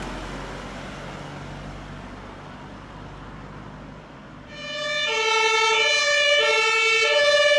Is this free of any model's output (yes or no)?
yes